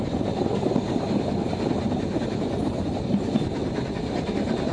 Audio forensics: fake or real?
real